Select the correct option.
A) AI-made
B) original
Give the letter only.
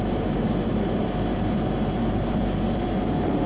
A